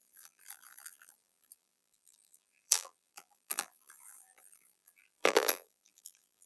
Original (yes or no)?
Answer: no